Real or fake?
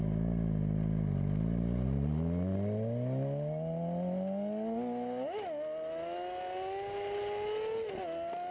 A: real